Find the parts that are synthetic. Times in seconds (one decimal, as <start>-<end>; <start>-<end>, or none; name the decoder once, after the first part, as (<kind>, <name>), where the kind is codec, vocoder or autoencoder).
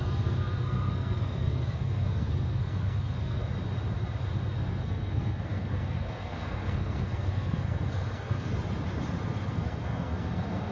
0.0-3.4 (codec, SNAC); 4.5-8.5; 9.5-10.7